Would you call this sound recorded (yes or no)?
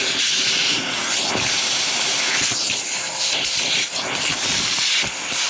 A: yes